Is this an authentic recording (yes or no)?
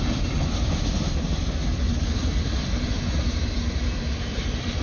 yes